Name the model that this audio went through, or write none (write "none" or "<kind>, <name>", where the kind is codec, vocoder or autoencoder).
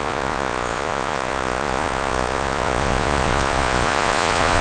vocoder, Vocos